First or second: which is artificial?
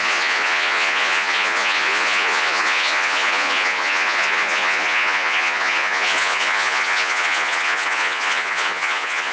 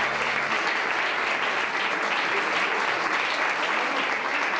first